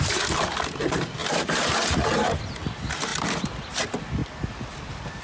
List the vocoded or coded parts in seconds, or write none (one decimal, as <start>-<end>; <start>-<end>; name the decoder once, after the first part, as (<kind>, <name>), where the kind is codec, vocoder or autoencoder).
1.2-2.4 (vocoder, BigVGAN v2)